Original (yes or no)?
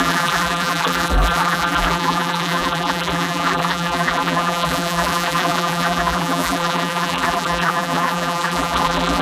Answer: no